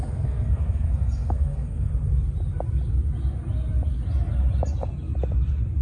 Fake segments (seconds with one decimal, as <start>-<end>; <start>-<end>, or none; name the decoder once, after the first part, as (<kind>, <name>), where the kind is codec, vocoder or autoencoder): 0.0-1.9 (codec, SNAC)